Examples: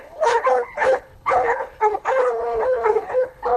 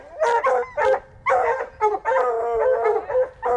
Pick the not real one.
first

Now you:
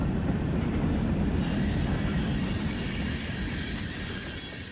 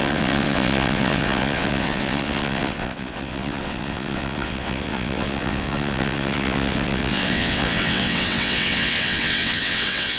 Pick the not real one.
second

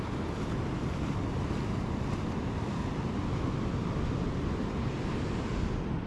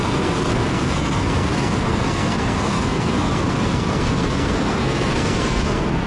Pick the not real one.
second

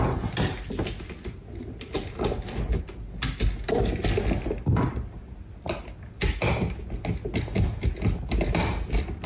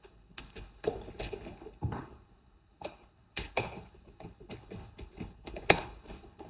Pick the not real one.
second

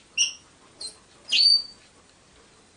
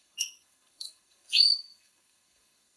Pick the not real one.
second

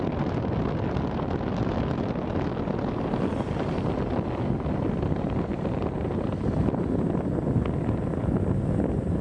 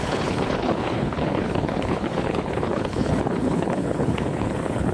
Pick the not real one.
second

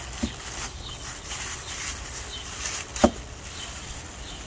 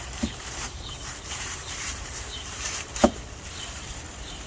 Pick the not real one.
second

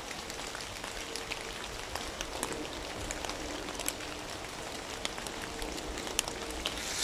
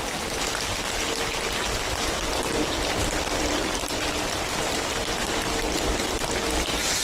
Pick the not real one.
second